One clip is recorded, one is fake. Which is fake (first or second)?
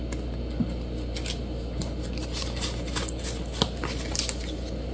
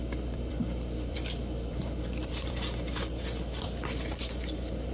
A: second